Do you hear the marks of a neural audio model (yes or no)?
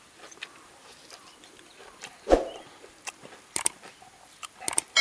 no